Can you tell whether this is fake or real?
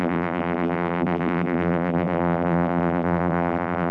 fake